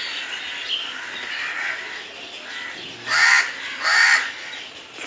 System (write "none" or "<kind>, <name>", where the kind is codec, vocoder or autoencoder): none